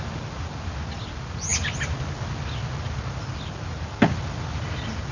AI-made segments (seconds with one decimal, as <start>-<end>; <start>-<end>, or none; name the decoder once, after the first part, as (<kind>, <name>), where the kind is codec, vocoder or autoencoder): none